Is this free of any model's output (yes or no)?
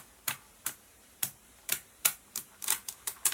no